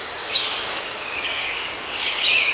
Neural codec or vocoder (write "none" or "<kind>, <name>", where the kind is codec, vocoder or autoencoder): codec, DAC